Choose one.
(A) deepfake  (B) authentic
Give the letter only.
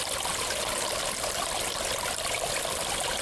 A